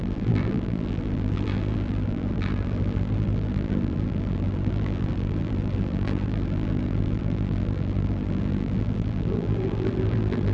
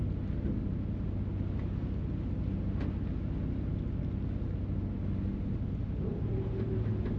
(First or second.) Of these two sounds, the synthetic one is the first